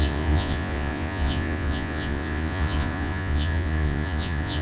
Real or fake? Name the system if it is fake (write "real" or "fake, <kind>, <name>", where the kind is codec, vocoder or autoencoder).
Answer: fake, vocoder, Vocos